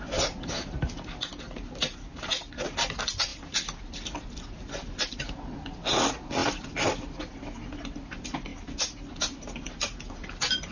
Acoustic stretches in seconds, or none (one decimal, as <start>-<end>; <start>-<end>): 0.0-3.3; 4.3-6.4; 7.0-10.7